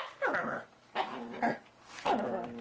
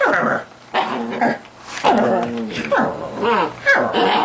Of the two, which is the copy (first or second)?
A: first